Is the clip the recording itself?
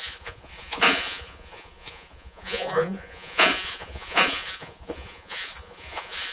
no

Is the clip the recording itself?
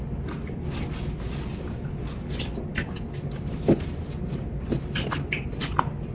yes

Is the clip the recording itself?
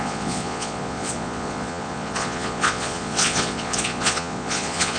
no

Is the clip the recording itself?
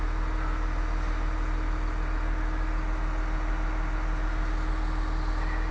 yes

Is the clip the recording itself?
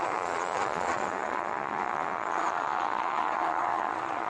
no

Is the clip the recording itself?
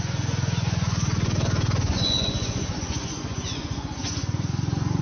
no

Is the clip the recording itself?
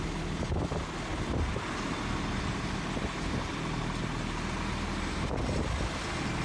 yes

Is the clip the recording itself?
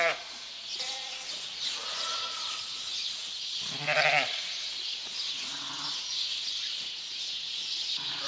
no